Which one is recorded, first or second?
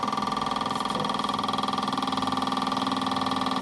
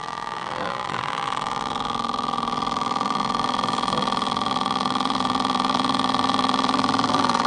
first